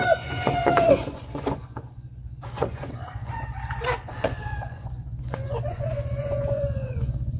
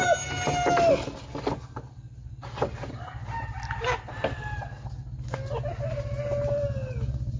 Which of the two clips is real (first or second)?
second